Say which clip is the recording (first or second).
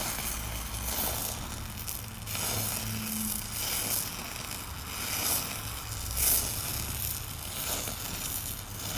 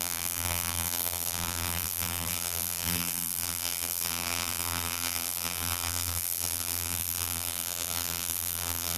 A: first